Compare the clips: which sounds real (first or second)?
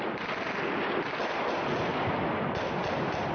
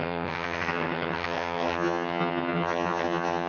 first